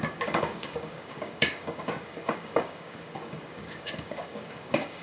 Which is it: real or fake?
fake